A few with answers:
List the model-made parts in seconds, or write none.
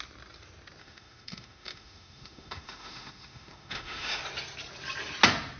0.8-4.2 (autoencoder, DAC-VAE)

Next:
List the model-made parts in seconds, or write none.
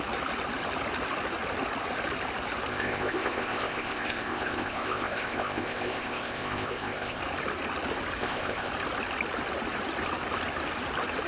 2.7-7.2 (codec, ZipCodec); 8.2-8.7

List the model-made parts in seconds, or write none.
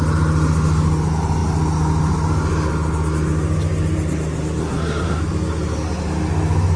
4.6-5.2 (codec, SNAC)